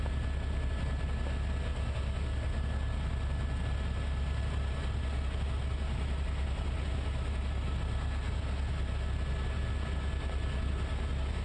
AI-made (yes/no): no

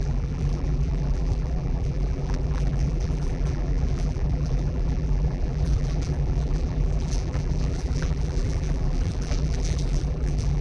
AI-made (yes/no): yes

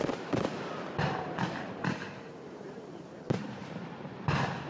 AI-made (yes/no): yes